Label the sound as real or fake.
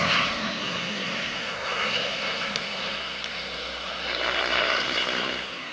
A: fake